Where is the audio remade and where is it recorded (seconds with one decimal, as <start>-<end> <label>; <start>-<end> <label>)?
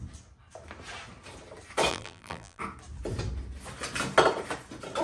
0.0-1.9 recorded; 1.9-2.6 remade; 2.6-5.0 recorded